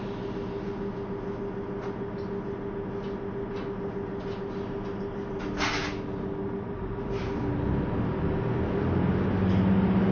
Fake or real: real